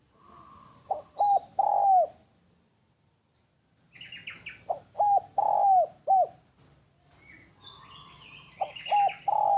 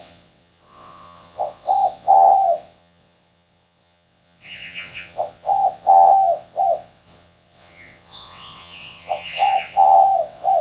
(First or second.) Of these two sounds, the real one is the first